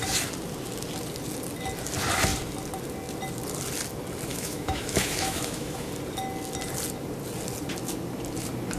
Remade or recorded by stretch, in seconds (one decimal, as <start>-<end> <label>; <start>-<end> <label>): 0.0-4.3 recorded; 4.3-5.9 remade; 5.9-8.8 recorded

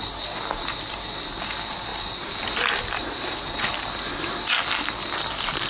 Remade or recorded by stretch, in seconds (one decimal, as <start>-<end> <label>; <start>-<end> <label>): 0.0-1.9 recorded; 1.9-3.0 remade; 3.0-5.7 recorded

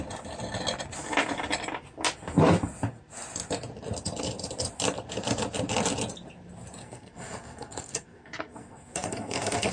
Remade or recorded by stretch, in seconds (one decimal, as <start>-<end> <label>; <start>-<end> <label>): 0.0-6.8 recorded; 6.8-9.7 remade

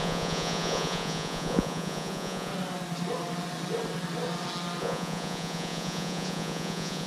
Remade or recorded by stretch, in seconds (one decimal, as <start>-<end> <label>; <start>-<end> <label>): 0.0-2.5 remade; 2.5-4.8 recorded; 4.8-7.1 remade

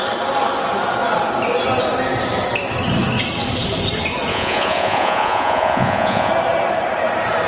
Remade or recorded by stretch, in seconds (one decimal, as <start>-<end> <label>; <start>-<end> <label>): 0.0-4.3 recorded; 4.3-6.3 remade; 6.3-7.5 recorded

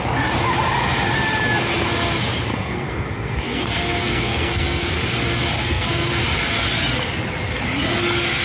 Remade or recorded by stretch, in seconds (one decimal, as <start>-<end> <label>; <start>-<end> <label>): 0.0-2.5 recorded; 2.5-4.9 remade; 4.9-5.5 recorded; 5.5-6.1 remade; 6.1-8.4 recorded